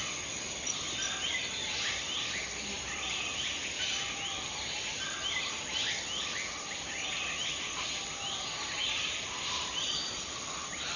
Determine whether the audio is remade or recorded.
recorded